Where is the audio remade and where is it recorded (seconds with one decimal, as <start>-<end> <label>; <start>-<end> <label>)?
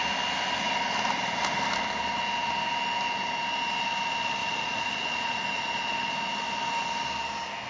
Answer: 0.0-4.4 recorded; 4.4-5.7 remade; 5.7-7.7 recorded